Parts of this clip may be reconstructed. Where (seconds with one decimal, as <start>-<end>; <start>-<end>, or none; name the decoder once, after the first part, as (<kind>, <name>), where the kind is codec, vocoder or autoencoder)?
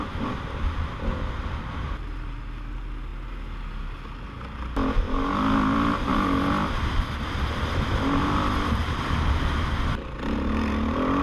none